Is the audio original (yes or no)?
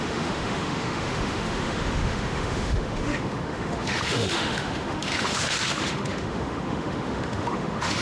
no